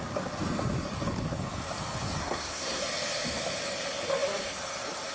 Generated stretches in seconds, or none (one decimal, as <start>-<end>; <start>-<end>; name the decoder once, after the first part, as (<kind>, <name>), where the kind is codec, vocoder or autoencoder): 2.2-2.8 (codec, SNAC)